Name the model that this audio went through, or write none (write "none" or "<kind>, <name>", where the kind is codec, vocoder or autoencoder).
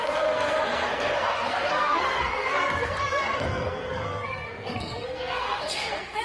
codec, SNAC